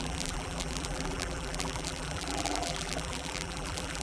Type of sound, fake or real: fake